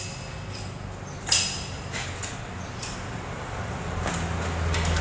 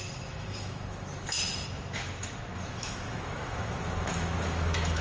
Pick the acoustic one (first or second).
first